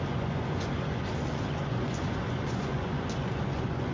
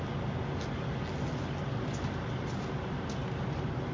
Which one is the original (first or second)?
second